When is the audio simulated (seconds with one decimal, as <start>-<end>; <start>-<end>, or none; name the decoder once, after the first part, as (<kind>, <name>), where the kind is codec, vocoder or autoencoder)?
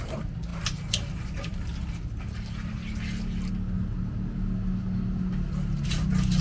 none